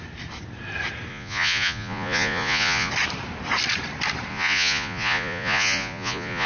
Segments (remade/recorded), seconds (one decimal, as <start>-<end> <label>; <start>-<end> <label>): 0.0-1.1 recorded; 1.1-2.9 remade; 2.9-4.3 recorded; 4.3-6.5 remade